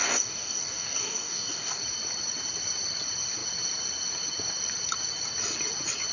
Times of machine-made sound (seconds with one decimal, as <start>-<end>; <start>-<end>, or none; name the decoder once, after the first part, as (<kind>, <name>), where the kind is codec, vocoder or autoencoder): 0.0-1.8 (codec, DAC)